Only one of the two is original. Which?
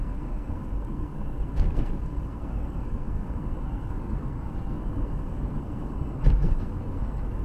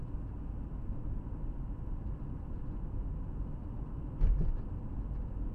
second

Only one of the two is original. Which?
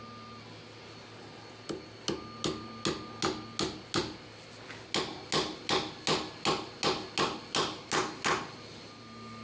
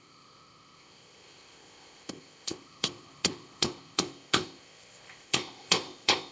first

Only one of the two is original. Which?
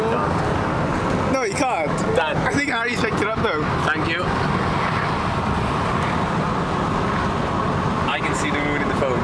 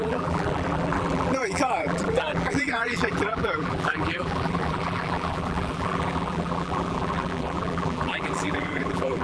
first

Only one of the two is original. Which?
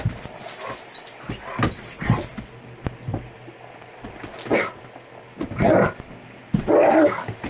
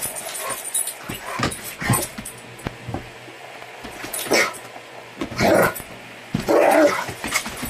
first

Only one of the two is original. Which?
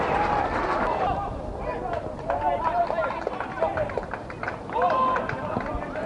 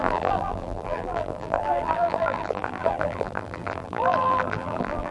first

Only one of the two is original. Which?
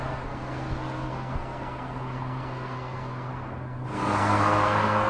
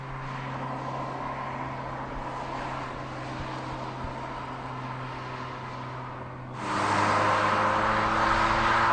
second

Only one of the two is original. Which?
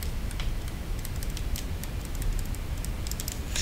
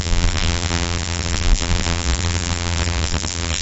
first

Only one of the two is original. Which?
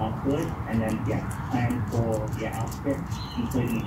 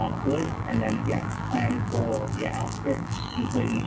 first